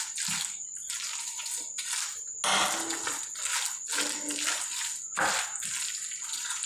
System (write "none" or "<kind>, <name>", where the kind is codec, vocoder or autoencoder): none